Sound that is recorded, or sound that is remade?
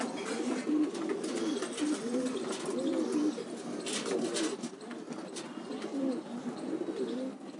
recorded